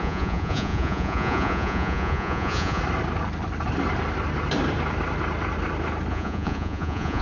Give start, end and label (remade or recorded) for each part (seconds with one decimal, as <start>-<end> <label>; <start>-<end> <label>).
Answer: 0.0-2.8 remade; 2.8-6.1 recorded; 6.1-7.2 remade